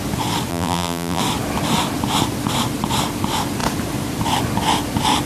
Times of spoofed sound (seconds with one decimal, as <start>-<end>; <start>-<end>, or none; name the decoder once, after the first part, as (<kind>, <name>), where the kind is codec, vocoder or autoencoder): 0.5-1.2 (vocoder, BigVGAN v2)